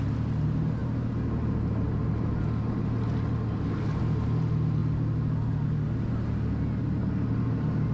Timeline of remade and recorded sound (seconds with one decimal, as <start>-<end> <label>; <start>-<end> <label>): 0.0-7.9 recorded